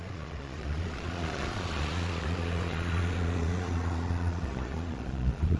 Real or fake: fake